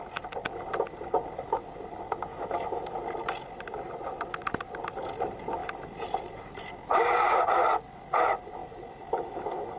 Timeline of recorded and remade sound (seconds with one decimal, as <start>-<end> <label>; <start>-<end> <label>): 0.0-2.3 recorded; 2.3-2.8 remade; 2.8-8.6 recorded; 8.6-9.8 remade

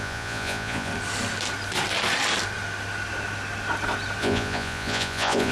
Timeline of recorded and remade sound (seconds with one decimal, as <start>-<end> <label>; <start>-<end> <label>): 0.0-0.9 remade; 0.9-4.2 recorded; 4.2-5.5 remade

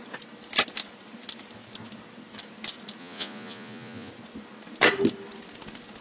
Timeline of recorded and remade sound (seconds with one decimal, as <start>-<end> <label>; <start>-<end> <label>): 0.0-3.0 recorded; 3.0-4.1 remade; 4.1-6.0 recorded

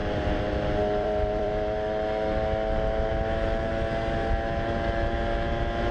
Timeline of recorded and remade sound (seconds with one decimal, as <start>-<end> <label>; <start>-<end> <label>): 0.0-1.5 remade; 1.5-5.9 recorded

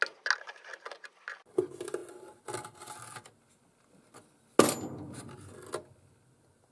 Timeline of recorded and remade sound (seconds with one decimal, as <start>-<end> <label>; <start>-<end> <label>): 0.0-6.7 recorded

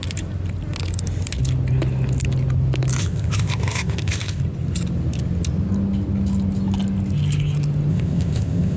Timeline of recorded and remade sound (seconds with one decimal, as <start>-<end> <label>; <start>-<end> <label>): 0.0-3.0 recorded; 3.0-4.4 remade; 4.4-7.9 recorded; 7.9-8.8 remade

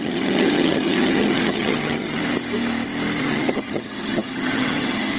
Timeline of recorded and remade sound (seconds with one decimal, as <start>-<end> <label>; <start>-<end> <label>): 0.0-2.2 remade; 2.2-3.2 recorded; 3.2-5.2 remade

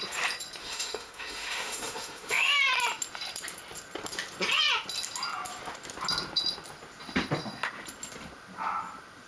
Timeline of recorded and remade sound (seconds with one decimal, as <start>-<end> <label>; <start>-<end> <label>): 0.0-0.6 recorded; 0.6-2.6 remade; 2.6-9.3 recorded